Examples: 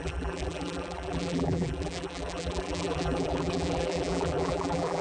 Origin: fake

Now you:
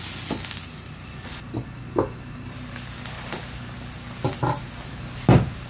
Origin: real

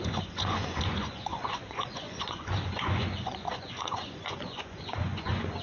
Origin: fake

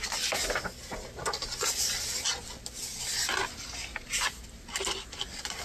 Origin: real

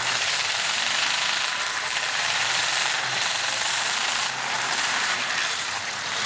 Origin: fake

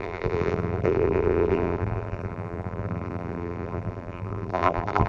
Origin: fake